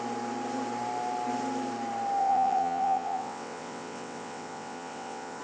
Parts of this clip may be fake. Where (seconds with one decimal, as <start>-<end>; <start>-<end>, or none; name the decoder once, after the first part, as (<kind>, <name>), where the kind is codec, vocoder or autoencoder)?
2.2-5.4 (vocoder, WaveNeXt)